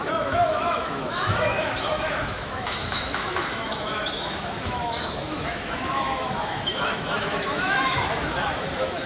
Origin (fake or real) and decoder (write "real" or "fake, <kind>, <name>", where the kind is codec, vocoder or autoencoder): fake, autoencoder, DAC-VAE